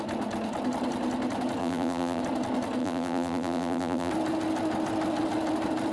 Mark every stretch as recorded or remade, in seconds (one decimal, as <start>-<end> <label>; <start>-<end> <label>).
0.0-1.6 recorded; 1.6-2.2 remade; 2.2-2.8 recorded; 2.8-4.1 remade; 4.1-5.9 recorded